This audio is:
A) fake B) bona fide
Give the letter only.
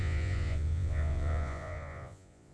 A